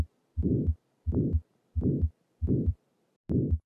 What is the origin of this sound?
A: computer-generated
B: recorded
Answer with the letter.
A